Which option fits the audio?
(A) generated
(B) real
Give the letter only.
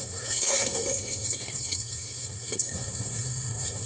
A